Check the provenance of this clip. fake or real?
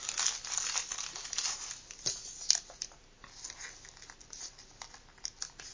real